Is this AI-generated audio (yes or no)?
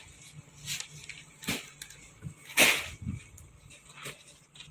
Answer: no